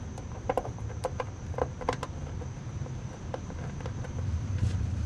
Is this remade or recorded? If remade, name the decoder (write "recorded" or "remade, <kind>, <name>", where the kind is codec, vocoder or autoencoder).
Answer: remade, vocoder, BigVGAN v2